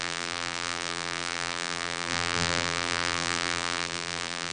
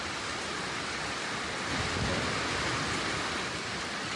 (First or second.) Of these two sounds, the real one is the second